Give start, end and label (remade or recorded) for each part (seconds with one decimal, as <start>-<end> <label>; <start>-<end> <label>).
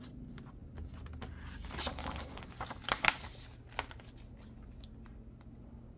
0.0-6.0 recorded